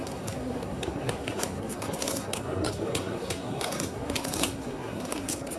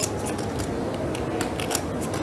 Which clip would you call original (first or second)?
second